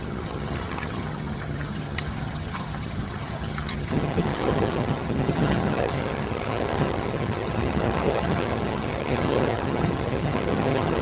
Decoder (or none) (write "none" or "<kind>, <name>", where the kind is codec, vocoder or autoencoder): vocoder, HiFi-GAN